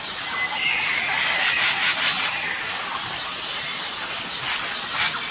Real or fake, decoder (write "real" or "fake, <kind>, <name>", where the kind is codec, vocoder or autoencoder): real